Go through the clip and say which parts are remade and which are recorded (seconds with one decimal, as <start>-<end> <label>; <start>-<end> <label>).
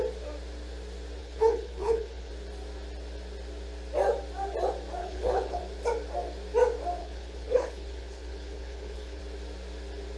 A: 0.0-1.2 recorded; 1.2-2.3 remade; 2.3-5.0 recorded; 5.0-5.6 remade; 5.6-7.0 recorded; 7.0-9.2 remade; 9.2-10.2 recorded